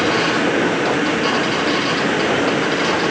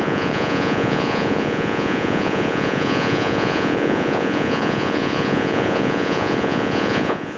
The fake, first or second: second